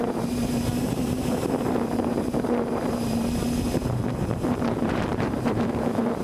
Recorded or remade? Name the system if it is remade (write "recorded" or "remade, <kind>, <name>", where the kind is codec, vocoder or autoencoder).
remade, vocoder, BigVGAN v2